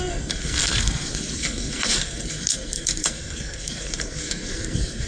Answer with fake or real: fake